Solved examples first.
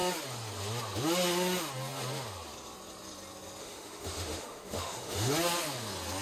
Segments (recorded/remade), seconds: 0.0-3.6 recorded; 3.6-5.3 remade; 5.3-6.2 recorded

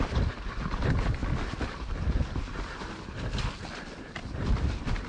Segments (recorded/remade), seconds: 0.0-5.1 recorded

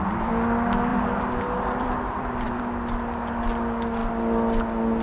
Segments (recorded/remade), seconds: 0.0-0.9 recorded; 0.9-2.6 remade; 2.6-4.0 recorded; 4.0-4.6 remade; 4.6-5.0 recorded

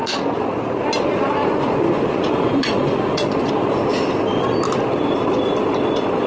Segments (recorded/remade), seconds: 0.0-1.4 recorded; 1.4-3.5 remade; 3.5-6.3 recorded

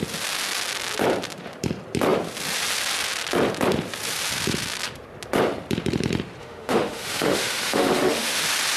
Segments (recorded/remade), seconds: 0.0-6.4 recorded; 6.4-8.4 remade; 8.4-8.8 recorded

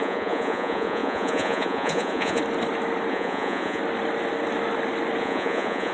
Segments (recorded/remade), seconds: 0.0-2.4 remade; 2.4-3.1 recorded; 3.1-3.8 remade; 3.8-5.2 recorded; 5.2-5.9 remade

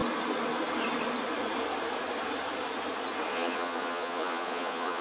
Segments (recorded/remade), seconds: 0.0-3.3 recorded; 3.3-5.0 remade